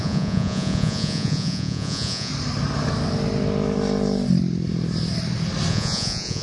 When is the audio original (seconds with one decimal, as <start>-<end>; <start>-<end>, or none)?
2.3-5.7